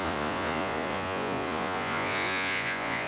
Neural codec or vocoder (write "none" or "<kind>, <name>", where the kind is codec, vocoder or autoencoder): vocoder, Vocos